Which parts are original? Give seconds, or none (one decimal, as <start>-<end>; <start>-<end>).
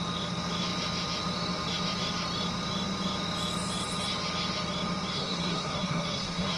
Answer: 0.0-5.1